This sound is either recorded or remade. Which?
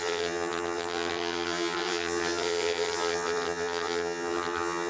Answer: remade